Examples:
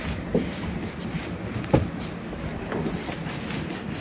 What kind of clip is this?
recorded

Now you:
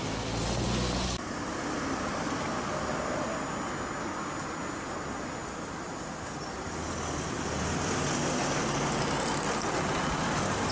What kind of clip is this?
recorded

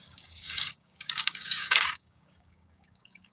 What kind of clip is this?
remade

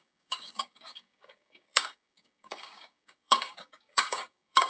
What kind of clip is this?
remade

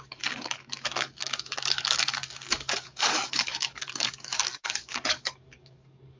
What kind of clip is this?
remade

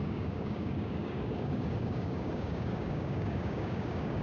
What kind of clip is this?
remade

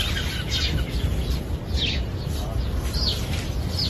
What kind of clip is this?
recorded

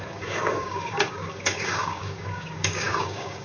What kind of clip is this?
remade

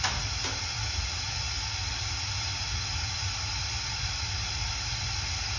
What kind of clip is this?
recorded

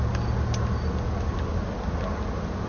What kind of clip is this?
recorded